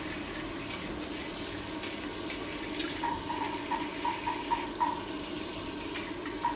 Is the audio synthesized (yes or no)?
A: no